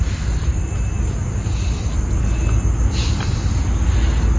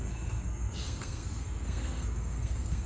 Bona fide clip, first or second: first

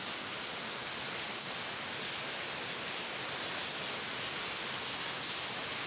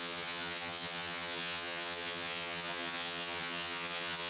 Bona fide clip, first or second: first